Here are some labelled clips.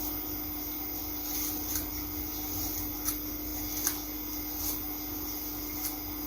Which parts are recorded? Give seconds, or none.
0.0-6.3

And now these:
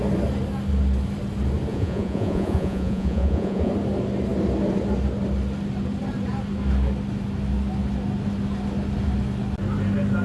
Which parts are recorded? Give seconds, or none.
0.0-1.7; 3.7-10.2

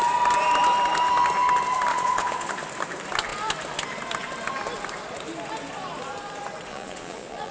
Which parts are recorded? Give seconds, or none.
0.0-1.9; 2.5-6.7

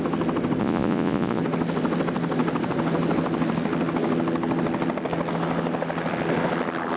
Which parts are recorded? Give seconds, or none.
0.0-0.6; 1.4-7.0